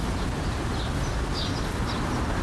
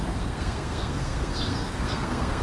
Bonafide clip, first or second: first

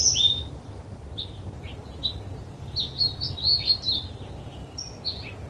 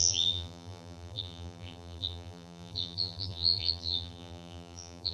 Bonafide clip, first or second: first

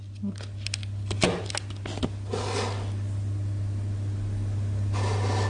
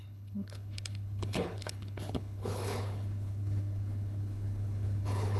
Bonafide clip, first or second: first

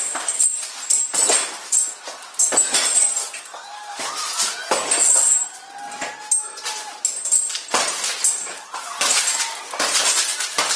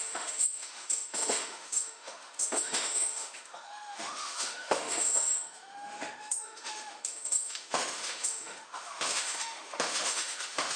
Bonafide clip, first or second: first